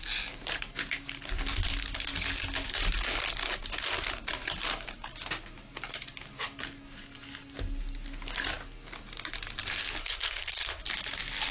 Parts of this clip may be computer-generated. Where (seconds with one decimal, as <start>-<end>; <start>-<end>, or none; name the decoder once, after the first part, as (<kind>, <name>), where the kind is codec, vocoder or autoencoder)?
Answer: 10.0-10.8 (codec, HILCodec)